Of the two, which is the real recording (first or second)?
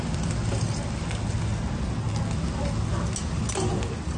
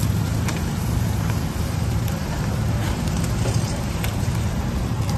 first